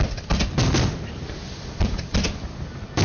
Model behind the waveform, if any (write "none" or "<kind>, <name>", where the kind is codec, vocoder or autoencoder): none